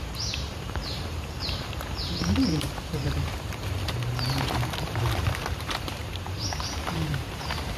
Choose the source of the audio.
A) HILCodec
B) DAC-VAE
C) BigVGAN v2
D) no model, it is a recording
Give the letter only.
C